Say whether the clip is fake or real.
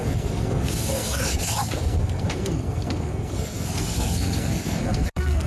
fake